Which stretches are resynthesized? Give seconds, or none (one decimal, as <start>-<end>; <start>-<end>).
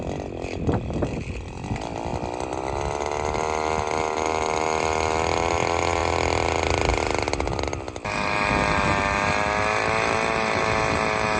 none